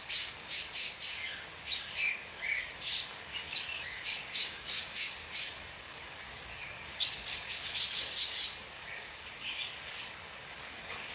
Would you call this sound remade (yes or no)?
yes